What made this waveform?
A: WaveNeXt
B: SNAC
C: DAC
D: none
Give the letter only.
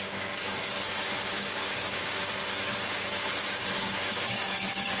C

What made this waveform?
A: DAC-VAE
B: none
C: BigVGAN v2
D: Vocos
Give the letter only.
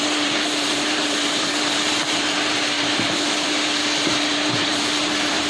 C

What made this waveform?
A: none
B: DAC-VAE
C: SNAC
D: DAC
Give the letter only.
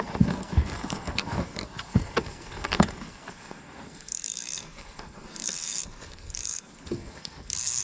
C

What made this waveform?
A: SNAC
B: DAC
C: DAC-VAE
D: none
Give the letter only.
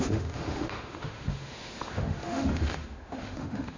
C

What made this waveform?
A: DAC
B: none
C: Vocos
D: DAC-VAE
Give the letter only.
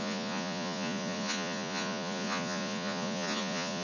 C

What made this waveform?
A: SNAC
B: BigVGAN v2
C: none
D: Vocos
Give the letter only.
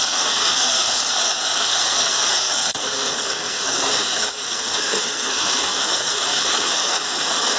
A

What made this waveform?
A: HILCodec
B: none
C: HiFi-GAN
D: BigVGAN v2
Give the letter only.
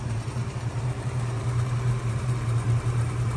D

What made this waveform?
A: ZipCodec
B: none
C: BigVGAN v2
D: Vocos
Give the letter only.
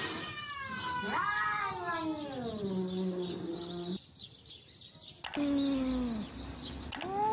B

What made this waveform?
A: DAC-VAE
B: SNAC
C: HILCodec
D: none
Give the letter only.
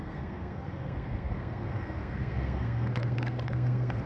B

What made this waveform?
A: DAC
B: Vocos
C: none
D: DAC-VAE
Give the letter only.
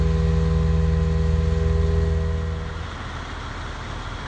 C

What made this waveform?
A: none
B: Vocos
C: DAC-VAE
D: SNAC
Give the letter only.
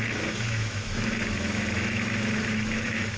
C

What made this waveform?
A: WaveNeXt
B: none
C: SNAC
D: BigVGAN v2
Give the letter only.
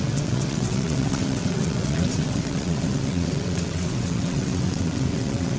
A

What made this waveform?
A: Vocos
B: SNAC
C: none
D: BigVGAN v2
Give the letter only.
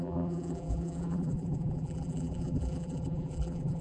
D